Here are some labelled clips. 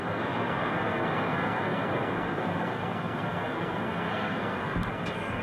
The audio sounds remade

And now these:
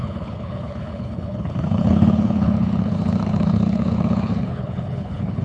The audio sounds remade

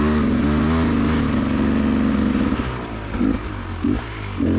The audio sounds recorded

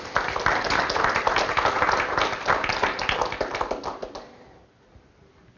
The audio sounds recorded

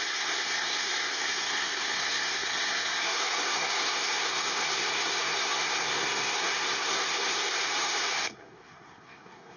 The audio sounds remade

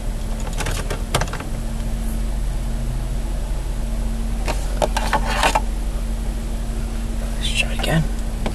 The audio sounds recorded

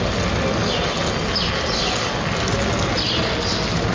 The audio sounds recorded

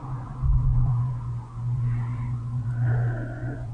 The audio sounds remade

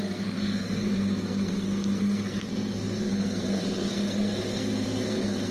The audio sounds remade